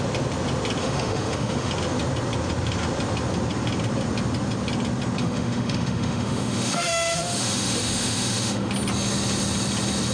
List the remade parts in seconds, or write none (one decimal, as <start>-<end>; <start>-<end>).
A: 0.8-1.7; 5.2-8.7